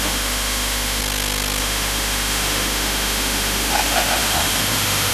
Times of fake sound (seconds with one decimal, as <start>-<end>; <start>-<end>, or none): 0.0-1.0; 1.6-5.1

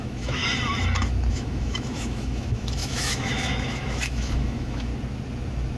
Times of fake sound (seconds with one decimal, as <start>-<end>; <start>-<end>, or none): 0.0-0.4; 1.3-4.9

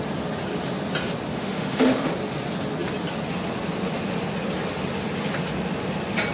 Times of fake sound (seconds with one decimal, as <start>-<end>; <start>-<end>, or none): 1.3-2.1

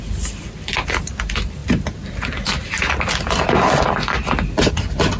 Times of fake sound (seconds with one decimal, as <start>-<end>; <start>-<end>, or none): none

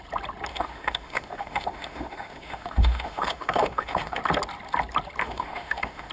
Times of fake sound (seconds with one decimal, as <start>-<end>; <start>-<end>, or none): 0.5-4.2; 5.2-6.1

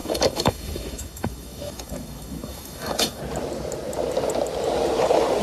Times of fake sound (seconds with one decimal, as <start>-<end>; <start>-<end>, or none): 0.0-3.2